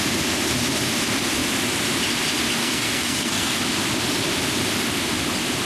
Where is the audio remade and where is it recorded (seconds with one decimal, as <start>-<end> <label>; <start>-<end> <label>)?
0.0-2.6 recorded; 2.6-3.6 remade; 3.6-5.7 recorded